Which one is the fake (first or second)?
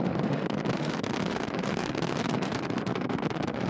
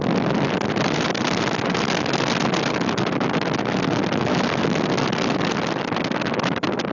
first